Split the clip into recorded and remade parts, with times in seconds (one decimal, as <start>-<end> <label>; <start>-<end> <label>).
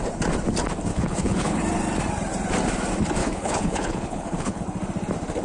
0.0-0.9 recorded; 0.9-1.6 remade; 1.6-3.2 recorded; 3.2-4.6 remade; 4.6-5.4 recorded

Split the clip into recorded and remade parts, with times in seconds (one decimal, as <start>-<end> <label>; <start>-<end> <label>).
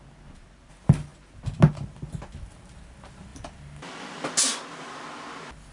0.0-5.7 recorded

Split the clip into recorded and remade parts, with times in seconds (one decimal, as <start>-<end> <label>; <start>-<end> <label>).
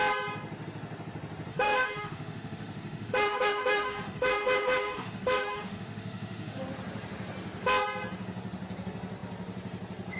0.0-1.5 recorded; 1.5-6.6 remade; 6.6-10.2 recorded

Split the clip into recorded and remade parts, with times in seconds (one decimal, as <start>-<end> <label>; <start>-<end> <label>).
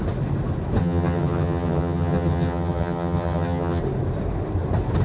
0.0-0.8 recorded; 0.8-3.8 remade; 3.8-5.0 recorded